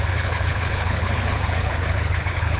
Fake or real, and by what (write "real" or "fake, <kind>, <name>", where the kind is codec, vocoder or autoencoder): fake, codec, HILCodec